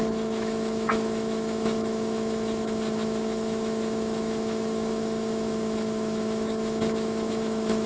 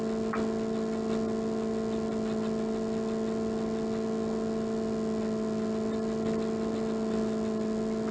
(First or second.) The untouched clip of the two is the second